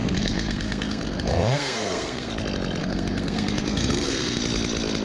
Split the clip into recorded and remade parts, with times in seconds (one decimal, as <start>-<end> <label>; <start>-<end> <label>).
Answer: 0.0-2.3 remade; 2.3-2.8 recorded; 2.8-4.4 remade; 4.4-5.0 recorded